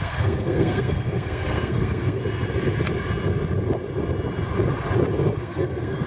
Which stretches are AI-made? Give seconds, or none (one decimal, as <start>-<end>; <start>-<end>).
0.0-2.2; 5.4-6.1